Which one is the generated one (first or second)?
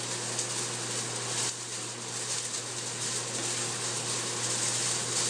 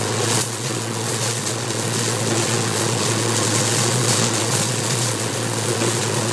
second